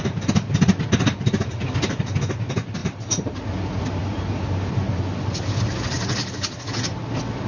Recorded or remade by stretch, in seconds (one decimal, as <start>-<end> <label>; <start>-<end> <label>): 0.0-2.8 recorded; 2.8-3.4 remade; 3.4-4.0 recorded; 4.0-5.0 remade; 5.0-7.5 recorded